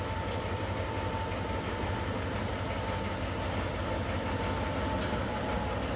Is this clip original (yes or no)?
yes